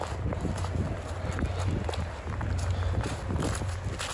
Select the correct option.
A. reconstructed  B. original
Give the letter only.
B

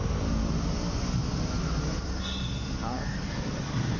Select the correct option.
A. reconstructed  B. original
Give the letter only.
B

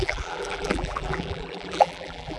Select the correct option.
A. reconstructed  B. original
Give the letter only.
A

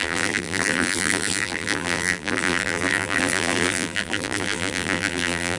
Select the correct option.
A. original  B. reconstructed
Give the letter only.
B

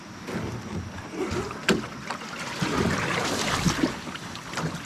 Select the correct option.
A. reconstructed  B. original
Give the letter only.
B